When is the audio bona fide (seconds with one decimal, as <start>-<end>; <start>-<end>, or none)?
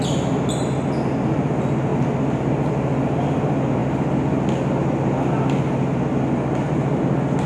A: 0.0-7.5